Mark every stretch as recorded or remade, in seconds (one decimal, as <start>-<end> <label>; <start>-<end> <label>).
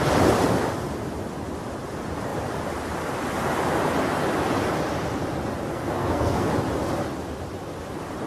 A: 0.0-5.7 recorded; 5.7-6.5 remade; 6.5-8.3 recorded